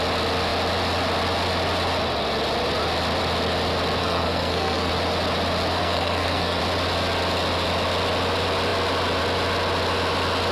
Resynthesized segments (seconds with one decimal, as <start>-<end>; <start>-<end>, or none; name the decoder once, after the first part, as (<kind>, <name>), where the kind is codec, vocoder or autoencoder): 4.0-4.9 (codec, SNAC); 5.8-6.6